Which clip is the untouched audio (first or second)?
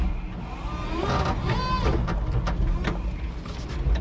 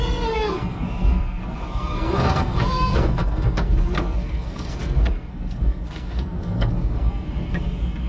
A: first